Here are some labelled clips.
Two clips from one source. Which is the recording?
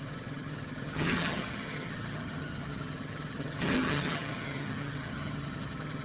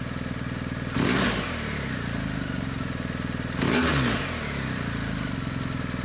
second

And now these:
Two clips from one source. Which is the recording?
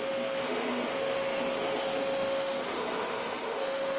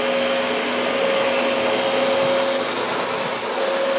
second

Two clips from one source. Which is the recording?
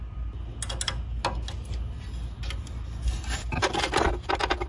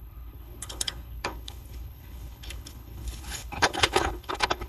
first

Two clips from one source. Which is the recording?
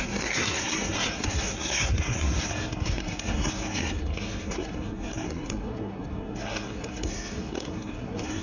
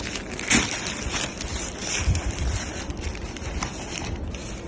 second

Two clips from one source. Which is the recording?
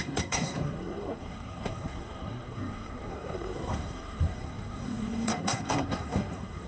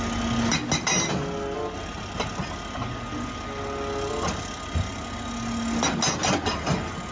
second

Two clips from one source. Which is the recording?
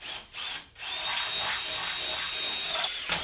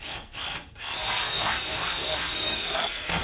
first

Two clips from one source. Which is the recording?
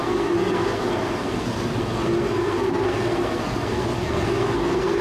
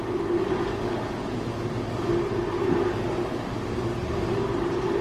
second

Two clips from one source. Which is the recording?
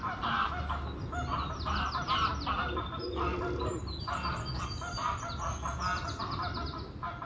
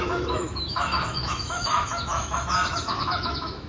first